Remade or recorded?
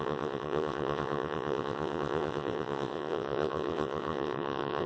remade